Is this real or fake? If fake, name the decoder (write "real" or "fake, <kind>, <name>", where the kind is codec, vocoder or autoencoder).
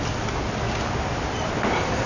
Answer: real